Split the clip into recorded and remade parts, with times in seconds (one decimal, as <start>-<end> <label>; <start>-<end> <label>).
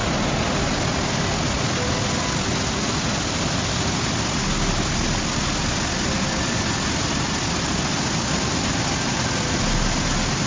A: 0.0-10.5 recorded